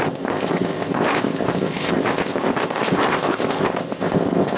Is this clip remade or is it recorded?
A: remade